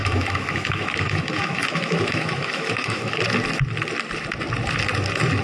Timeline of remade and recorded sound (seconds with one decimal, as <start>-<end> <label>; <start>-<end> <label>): 0.0-3.2 remade; 3.2-5.4 recorded